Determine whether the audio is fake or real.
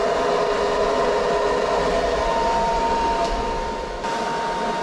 real